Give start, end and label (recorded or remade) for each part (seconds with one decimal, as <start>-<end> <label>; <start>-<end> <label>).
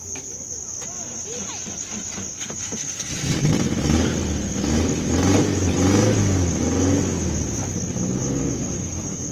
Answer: 0.0-2.3 recorded; 2.3-3.1 remade; 3.1-8.4 recorded; 8.4-9.3 remade